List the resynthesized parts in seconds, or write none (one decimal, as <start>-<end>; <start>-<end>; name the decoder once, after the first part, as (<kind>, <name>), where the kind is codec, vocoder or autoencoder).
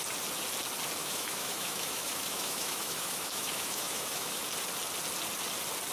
1.0-4.4 (autoencoder, DAC-VAE)